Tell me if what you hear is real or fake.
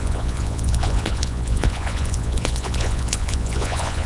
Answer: fake